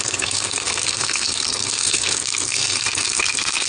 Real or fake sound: fake